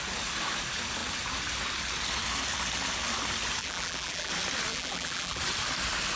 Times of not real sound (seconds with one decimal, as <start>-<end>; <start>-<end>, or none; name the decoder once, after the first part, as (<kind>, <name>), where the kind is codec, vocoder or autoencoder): 3.6-4.3 (vocoder, BigVGAN v2); 4.7-5.4